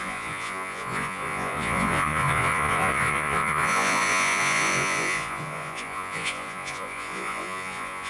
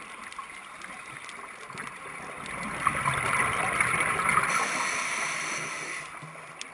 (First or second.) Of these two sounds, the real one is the second